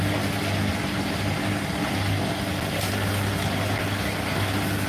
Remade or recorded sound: recorded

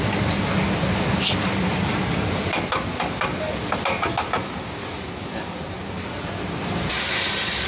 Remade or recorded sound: recorded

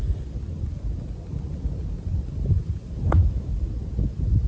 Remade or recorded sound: recorded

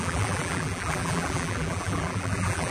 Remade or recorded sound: remade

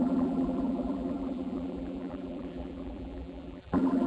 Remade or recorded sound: remade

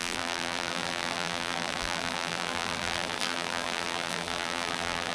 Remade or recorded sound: remade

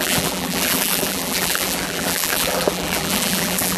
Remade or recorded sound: remade